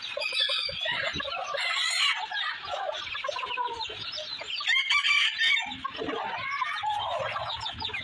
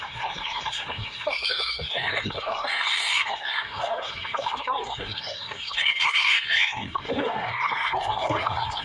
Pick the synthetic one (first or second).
second